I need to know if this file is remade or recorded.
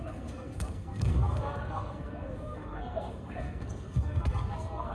remade